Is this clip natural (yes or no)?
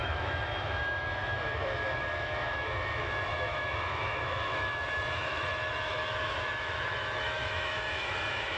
no